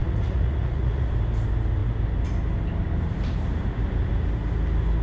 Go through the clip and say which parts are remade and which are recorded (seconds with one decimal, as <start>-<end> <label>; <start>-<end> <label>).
0.0-1.1 remade; 1.1-5.0 recorded